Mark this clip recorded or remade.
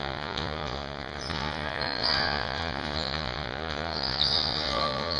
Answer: remade